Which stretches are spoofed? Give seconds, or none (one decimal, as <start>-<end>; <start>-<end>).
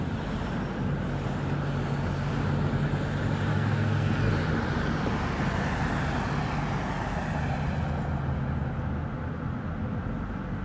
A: 3.5-4.2